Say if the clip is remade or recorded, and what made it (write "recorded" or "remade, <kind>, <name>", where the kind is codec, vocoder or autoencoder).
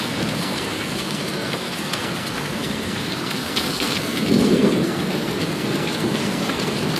remade, codec, SNAC